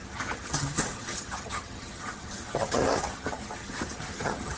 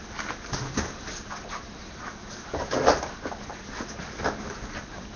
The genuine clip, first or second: second